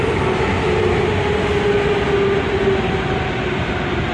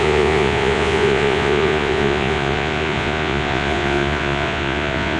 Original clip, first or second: first